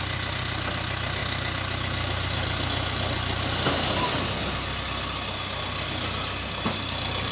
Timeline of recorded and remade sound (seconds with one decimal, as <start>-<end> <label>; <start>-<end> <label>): 0.0-7.3 recorded